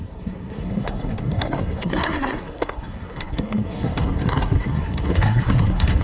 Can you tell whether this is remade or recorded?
remade